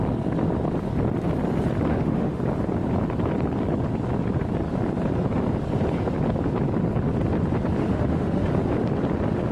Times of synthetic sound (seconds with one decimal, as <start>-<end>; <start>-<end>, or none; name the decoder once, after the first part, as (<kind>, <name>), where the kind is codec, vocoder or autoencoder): 1.9-2.4 (autoencoder, DAC-VAE); 7.8-8.5